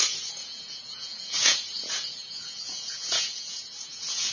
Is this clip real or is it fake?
fake